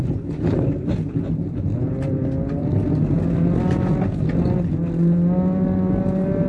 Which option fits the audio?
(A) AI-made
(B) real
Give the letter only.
B